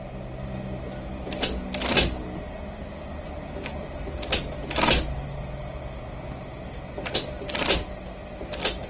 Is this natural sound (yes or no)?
yes